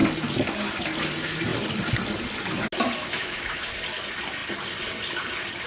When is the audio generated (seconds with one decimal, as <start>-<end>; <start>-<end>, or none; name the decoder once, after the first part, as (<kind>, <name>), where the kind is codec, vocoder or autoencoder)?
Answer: 3.0-3.7 (autoencoder, DAC-VAE)